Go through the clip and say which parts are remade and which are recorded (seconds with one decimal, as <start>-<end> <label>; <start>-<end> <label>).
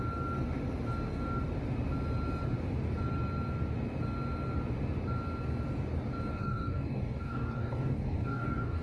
0.0-6.3 recorded; 6.3-8.8 remade